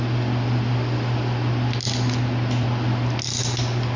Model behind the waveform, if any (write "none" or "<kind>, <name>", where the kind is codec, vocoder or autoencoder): none